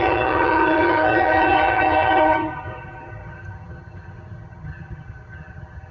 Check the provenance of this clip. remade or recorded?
remade